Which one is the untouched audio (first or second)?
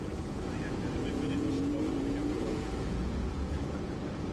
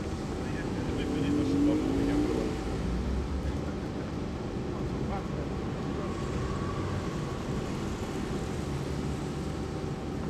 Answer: second